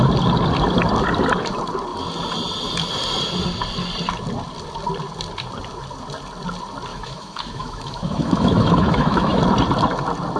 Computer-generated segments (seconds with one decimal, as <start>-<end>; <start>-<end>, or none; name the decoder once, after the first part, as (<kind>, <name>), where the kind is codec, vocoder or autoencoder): 6.9-9.4 (autoencoder, DAC-VAE)